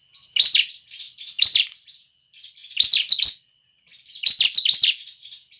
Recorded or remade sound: recorded